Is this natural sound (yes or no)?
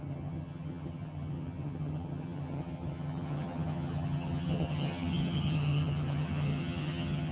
no